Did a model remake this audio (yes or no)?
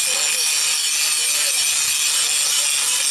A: no